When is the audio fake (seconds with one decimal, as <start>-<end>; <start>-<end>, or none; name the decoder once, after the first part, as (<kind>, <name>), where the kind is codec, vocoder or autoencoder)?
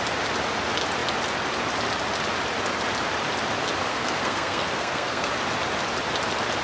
3.9-5.3 (codec, SNAC)